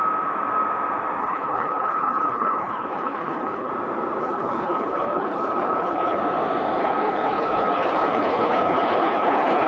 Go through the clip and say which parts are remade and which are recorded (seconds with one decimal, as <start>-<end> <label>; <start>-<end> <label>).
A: 0.0-1.2 recorded; 1.2-3.7 remade; 3.7-4.2 recorded; 4.2-6.2 remade; 6.2-6.8 recorded; 6.8-9.7 remade